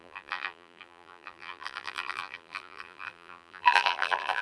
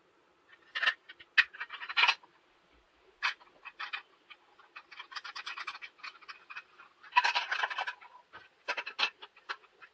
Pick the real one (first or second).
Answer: second